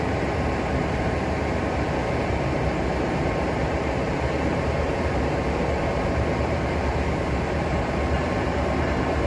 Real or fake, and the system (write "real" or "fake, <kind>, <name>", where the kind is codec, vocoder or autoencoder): fake, vocoder, BigVGAN v2